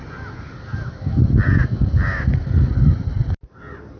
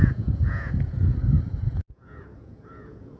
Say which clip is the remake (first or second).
second